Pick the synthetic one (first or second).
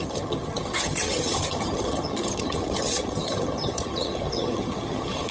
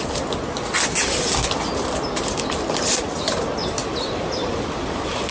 first